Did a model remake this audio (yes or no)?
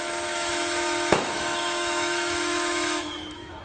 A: yes